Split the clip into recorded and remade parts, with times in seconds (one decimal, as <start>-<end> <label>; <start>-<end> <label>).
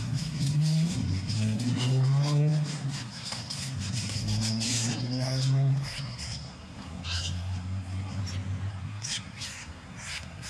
0.0-8.2 remade; 8.2-8.7 recorded; 8.7-10.5 remade